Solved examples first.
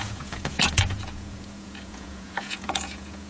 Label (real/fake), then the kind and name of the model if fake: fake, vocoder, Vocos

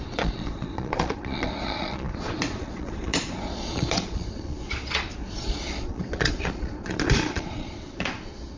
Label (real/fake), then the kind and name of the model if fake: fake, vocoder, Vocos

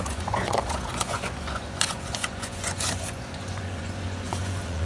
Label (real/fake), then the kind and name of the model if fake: fake, vocoder, Vocos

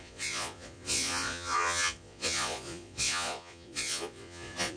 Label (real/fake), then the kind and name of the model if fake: fake, vocoder, Vocos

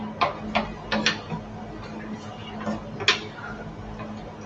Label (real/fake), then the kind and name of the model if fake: real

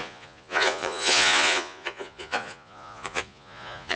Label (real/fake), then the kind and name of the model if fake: fake, vocoder, Vocos